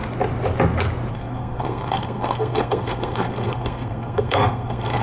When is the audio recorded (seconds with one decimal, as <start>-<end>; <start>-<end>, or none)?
0.0-1.1